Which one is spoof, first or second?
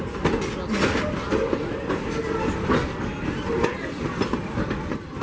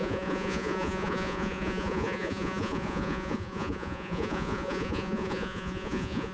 second